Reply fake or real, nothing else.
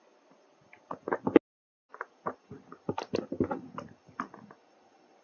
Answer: real